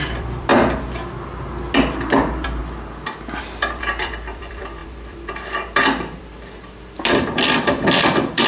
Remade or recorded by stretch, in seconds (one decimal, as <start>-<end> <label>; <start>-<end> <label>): 0.0-0.5 remade; 0.5-2.2 recorded; 2.2-2.6 remade; 2.6-3.4 recorded; 3.4-8.5 remade